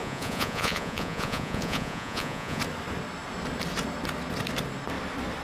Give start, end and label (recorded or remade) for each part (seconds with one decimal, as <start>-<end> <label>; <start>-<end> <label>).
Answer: 0.0-2.6 remade; 2.6-5.4 recorded